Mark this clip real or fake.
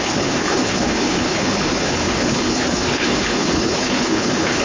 fake